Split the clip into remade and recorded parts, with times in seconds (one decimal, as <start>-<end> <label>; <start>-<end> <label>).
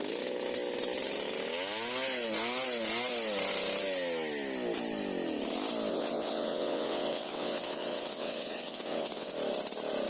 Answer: 0.0-5.9 recorded; 5.9-9.3 remade; 9.3-10.1 recorded